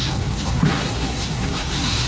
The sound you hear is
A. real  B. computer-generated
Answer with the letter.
B